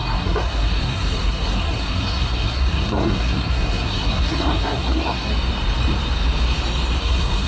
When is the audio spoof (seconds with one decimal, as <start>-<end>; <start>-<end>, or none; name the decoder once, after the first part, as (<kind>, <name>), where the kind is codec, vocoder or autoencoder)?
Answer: 0.0-5.3 (codec, SNAC); 7.0-7.5